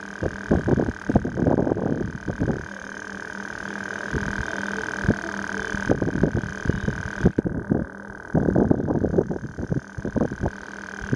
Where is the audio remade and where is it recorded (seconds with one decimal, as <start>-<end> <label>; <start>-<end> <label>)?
0.0-2.6 recorded; 2.6-4.1 remade; 4.1-9.1 recorded; 9.1-10.0 remade; 10.0-11.2 recorded